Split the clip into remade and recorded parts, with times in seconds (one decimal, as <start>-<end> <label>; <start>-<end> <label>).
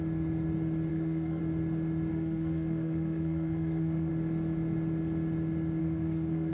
0.0-0.9 recorded; 0.9-1.4 remade; 1.4-2.1 recorded; 2.1-4.1 remade; 4.1-5.8 recorded; 5.8-6.5 remade